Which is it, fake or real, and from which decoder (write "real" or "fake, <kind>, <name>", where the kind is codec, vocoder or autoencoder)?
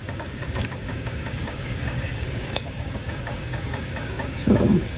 fake, codec, DAC